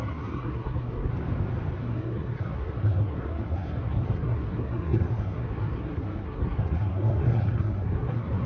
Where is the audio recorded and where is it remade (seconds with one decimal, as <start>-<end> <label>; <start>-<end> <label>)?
0.0-1.1 remade; 1.1-1.8 recorded; 1.8-8.5 remade